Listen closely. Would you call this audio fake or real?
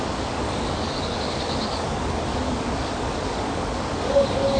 fake